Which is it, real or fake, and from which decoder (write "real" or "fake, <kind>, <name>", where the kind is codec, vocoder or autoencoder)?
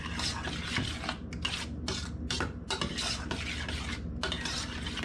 real